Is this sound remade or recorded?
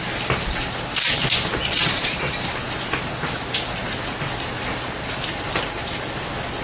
recorded